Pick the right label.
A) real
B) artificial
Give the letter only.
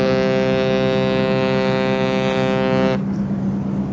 A